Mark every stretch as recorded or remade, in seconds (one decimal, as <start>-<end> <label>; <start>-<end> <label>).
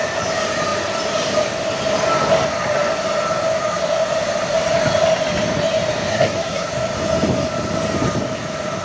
0.0-6.1 recorded; 6.1-6.7 remade; 6.7-8.8 recorded